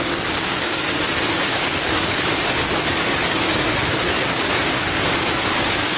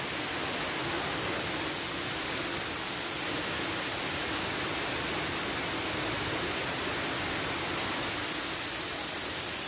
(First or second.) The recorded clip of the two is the second